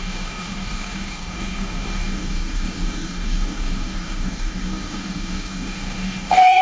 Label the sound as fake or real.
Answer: fake